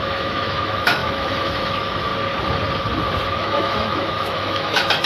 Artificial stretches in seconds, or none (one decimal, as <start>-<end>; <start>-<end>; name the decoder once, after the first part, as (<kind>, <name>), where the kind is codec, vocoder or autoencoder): 0.0-2.1 (autoencoder, DAC-VAE); 3.3-5.1